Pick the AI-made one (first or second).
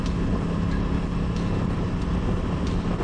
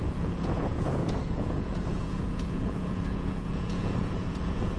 second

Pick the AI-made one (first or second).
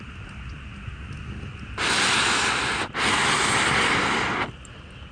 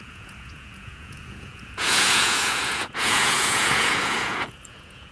second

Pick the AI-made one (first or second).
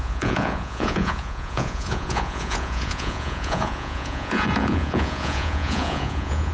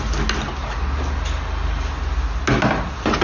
first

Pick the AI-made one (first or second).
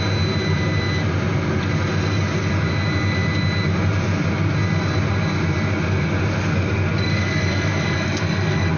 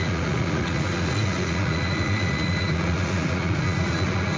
second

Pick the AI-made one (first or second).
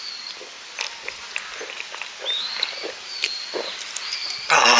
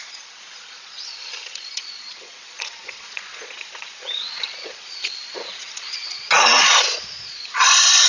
second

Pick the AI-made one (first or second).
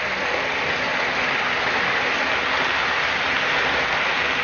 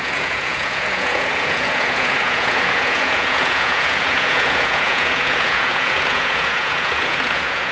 second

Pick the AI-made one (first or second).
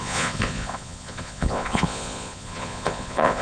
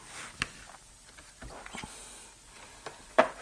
first